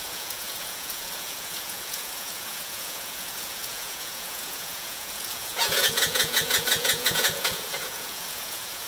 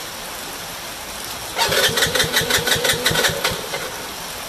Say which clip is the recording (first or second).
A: second